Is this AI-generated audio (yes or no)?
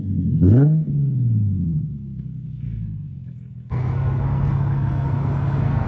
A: yes